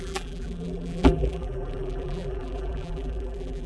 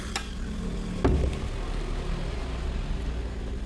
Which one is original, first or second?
second